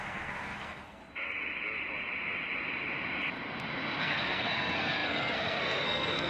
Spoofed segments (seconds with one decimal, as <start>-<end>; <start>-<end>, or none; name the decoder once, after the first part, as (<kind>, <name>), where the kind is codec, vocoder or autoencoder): 0.0-1.0 (codec, SNAC); 4.0-6.3